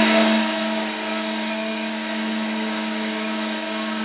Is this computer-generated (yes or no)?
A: yes